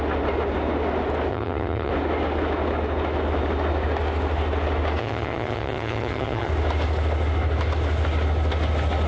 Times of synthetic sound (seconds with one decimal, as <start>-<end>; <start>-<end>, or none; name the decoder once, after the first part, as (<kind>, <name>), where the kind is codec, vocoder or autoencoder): 1.3-1.9 (vocoder, HiFi-GAN); 5.0-6.5